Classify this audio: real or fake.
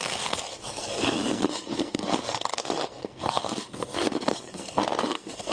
fake